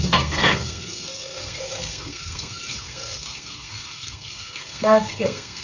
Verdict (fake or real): fake